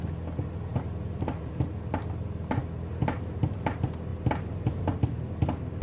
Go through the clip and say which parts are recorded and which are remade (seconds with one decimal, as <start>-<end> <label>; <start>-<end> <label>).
0.0-0.7 recorded; 0.7-1.6 remade; 1.6-4.1 recorded; 4.1-4.8 remade; 4.8-5.8 recorded